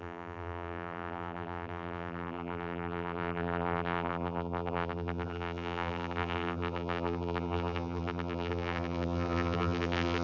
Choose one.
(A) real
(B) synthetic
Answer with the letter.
B